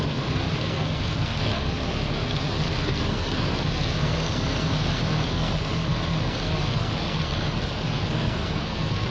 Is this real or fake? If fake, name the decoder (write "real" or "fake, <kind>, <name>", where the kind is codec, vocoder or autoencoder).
fake, codec, SNAC